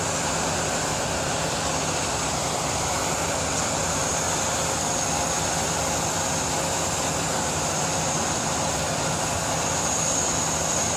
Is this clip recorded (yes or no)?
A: yes